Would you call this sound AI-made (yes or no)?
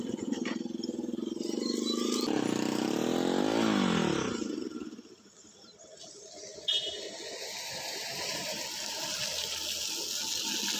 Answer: no